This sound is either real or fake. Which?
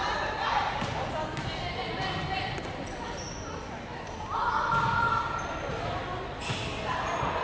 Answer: real